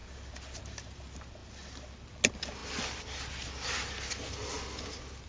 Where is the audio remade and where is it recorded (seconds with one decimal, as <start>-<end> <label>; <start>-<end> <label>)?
0.0-5.3 recorded